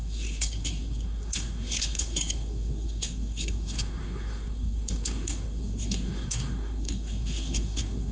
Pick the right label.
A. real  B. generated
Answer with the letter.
B